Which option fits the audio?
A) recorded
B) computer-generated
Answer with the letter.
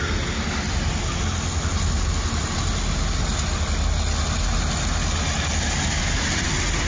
A